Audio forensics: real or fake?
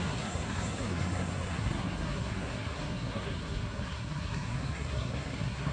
fake